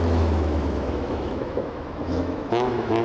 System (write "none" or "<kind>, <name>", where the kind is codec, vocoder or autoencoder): autoencoder, DAC-VAE